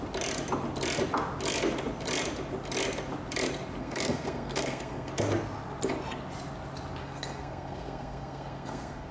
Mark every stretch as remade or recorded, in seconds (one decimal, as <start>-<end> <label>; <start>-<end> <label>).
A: 0.0-3.8 recorded; 3.8-5.1 remade; 5.1-7.0 recorded; 7.0-9.1 remade